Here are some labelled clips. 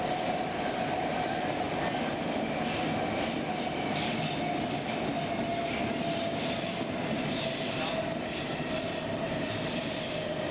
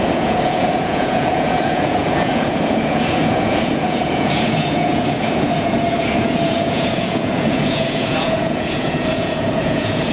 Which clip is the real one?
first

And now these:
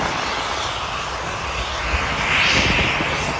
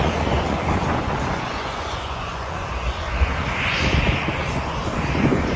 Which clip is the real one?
first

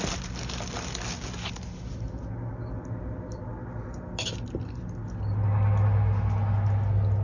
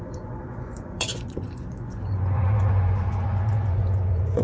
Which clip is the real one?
first